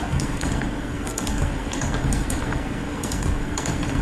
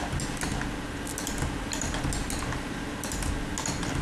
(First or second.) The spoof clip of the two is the first